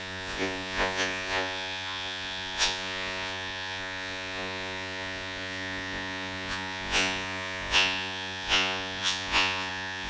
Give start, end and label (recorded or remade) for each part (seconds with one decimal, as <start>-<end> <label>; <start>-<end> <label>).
0.0-10.1 remade